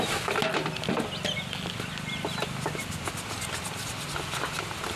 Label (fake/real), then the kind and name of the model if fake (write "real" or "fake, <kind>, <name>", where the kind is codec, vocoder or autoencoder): real